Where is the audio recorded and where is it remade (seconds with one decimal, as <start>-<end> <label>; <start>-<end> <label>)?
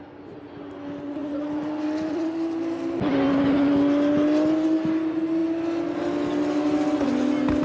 0.0-7.6 recorded